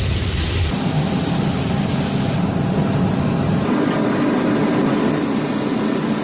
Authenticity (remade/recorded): recorded